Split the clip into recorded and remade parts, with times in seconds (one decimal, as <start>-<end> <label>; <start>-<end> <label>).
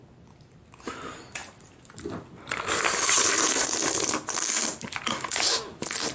0.0-6.1 recorded